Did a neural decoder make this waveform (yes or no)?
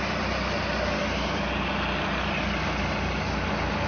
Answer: no